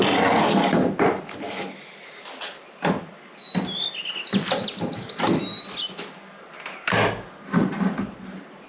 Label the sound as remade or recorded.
recorded